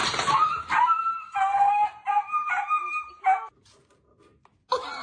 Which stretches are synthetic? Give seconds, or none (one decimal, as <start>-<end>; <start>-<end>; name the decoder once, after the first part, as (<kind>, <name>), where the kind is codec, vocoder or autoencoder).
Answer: 1.1-1.7 (codec, SNAC)